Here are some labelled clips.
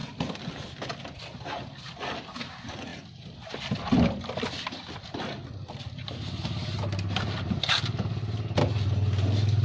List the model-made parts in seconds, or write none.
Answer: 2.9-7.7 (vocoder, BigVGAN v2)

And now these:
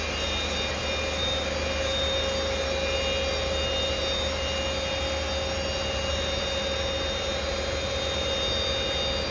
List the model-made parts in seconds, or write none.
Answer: none

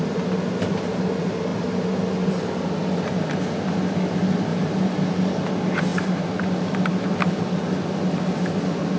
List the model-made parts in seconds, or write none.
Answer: 4.5-5.2 (vocoder, BigVGAN v2); 5.9-7.1

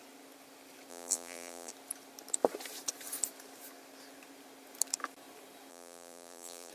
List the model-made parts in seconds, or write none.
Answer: 0.9-1.7 (vocoder, BigVGAN v2); 5.7-6.7

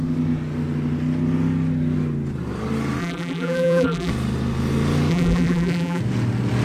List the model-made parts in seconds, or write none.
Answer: 3.0-4.1 (vocoder, BigVGAN v2); 5.1-6.0

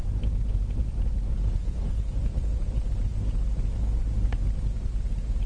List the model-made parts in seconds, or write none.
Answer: 0.0-3.1 (vocoder, BigVGAN v2); 3.7-5.5